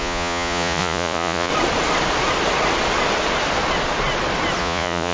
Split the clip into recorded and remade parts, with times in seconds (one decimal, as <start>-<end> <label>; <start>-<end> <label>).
0.0-1.5 remade; 1.5-4.6 recorded; 4.6-5.1 remade